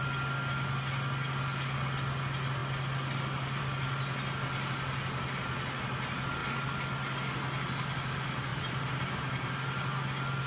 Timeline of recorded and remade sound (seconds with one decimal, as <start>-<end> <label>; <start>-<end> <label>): 0.0-8.5 recorded; 8.5-9.2 remade; 9.2-10.5 recorded